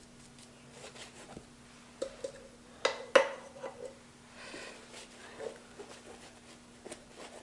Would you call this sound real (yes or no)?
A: yes